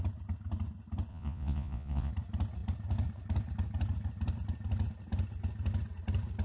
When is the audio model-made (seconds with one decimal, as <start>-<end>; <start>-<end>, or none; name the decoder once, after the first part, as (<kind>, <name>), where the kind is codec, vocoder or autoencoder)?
1.1-2.1 (vocoder, Vocos)